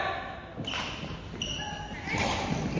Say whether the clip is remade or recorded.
recorded